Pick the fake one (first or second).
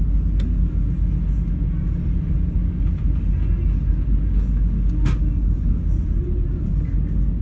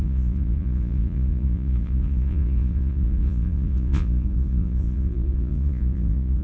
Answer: second